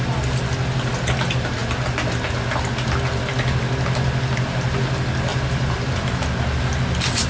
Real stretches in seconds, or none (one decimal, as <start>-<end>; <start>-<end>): 0.0-5.3; 6.2-7.3